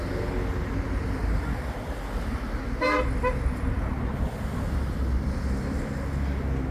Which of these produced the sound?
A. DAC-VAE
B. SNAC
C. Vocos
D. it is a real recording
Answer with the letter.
D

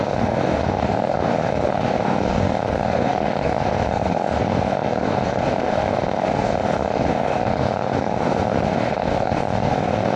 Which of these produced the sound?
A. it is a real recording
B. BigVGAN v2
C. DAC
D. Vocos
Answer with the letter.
C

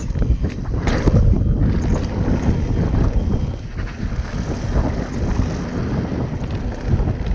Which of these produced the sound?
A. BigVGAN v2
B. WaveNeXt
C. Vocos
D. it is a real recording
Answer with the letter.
D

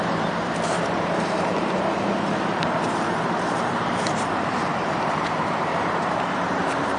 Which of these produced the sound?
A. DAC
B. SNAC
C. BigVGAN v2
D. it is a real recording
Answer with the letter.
C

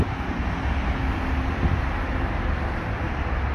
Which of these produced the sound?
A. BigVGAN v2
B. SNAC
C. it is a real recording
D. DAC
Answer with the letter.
C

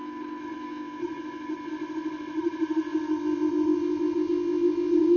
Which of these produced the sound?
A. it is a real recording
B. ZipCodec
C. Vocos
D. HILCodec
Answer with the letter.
B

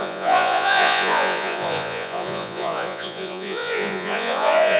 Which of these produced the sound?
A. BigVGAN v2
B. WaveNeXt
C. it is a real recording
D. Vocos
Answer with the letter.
D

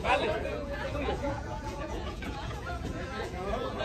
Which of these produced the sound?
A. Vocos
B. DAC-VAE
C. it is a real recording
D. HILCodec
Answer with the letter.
A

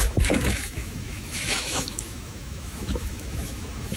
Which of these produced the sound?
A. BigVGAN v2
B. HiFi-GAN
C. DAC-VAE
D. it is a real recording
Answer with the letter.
C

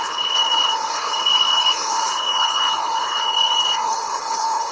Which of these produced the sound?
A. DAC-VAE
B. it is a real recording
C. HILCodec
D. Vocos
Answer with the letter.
C